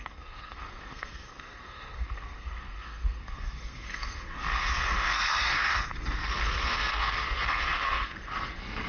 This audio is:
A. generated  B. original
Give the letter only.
A